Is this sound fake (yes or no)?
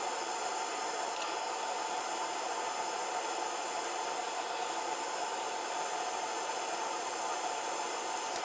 no